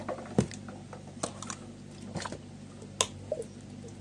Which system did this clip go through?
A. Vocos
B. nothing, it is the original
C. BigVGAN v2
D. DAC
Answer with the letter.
B